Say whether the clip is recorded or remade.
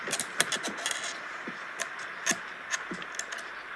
recorded